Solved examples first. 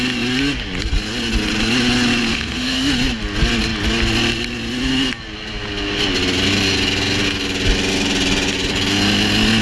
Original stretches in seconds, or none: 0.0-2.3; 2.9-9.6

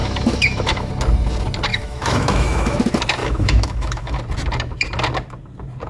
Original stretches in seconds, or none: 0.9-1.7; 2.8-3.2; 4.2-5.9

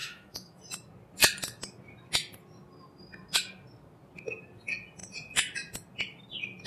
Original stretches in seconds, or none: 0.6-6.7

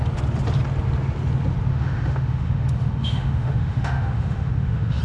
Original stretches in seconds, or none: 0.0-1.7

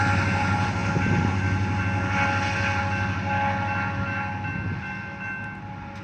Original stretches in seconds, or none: 0.0-6.0

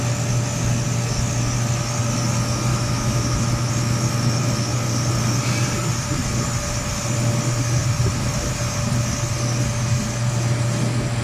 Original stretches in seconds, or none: 0.0-2.7; 3.7-11.2

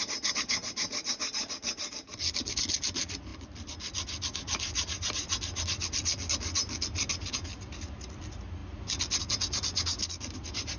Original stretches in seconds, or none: 0.0-10.8

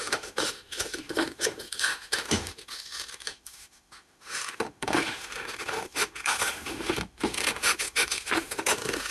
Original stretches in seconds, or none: none